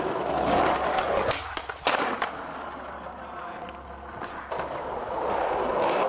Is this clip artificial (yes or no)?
no